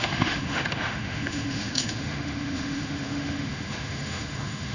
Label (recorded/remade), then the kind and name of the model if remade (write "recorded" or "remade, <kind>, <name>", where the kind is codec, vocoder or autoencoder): remade, autoencoder, DAC-VAE